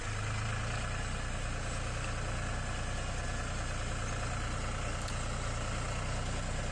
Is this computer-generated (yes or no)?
no